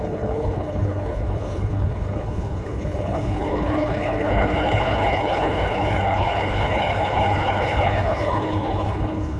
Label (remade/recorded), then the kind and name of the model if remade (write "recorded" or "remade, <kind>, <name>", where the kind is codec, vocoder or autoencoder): remade, codec, HILCodec